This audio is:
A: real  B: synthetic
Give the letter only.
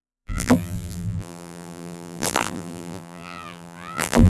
B